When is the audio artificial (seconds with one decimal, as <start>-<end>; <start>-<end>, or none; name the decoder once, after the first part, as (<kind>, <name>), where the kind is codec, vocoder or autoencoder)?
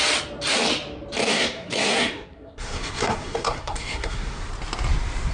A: 1.2-4.4 (codec, SNAC)